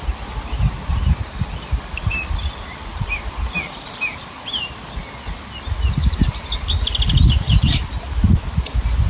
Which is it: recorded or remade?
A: recorded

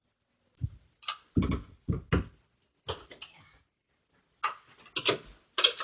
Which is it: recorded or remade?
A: recorded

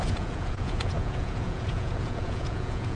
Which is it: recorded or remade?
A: remade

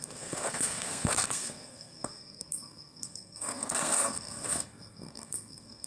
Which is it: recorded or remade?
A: remade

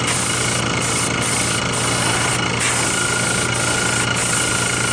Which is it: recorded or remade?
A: recorded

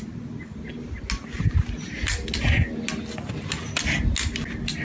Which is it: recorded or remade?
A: recorded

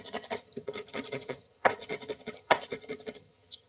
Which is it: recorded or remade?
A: remade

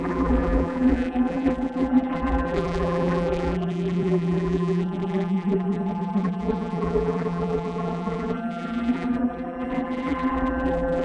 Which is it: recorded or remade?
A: remade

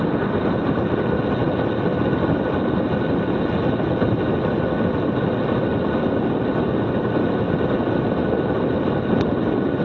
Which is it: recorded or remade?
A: recorded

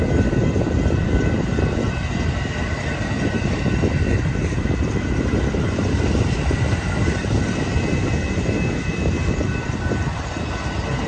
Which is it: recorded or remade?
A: remade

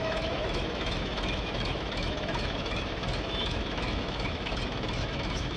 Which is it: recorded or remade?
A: remade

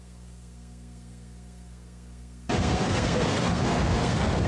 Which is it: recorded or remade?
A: remade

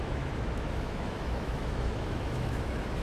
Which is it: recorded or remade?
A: remade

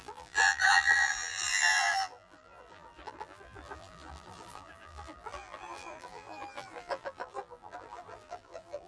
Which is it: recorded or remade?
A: remade